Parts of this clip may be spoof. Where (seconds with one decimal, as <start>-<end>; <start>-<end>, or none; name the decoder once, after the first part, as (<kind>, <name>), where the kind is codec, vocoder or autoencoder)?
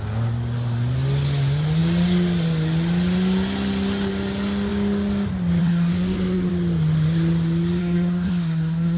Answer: 5.6-6.5 (codec, SNAC); 7.8-9.0